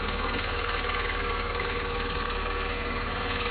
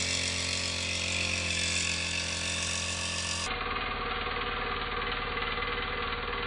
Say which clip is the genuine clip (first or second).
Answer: second